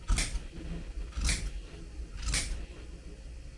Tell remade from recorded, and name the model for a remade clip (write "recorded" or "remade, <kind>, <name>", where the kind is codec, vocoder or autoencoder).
recorded